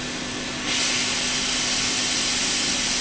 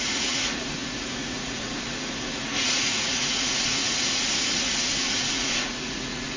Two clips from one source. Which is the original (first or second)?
first